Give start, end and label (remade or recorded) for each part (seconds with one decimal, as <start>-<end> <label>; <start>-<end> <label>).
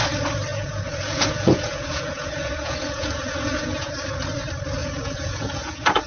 0.0-0.5 recorded; 0.5-3.9 remade; 3.9-4.8 recorded; 4.8-6.1 remade